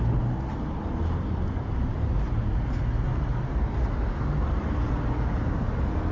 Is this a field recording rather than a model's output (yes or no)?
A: yes